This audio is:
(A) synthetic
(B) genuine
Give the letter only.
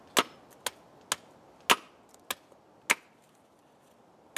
B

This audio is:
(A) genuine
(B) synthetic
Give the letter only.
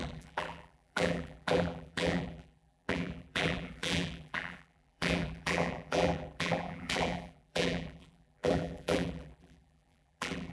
B